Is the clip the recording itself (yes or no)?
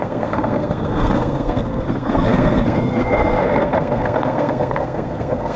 no